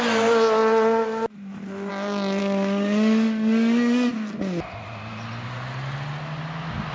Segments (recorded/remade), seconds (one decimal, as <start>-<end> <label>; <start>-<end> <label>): 0.0-2.4 recorded; 2.4-4.1 remade; 4.1-6.9 recorded